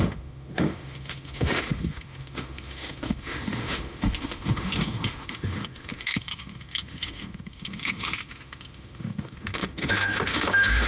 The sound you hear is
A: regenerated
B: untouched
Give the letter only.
A